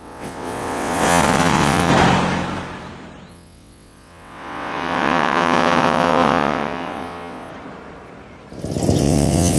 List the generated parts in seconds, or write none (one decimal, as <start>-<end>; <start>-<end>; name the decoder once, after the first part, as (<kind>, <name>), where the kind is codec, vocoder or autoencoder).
0.0-1.9 (vocoder, WaveNeXt); 3.3-7.5; 9.0-9.6